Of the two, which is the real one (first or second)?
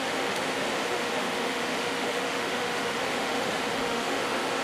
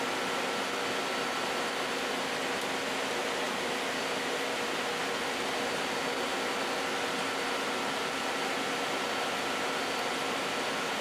second